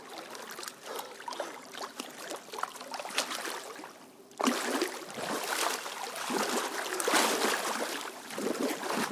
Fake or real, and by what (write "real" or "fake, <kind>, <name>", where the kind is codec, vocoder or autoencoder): real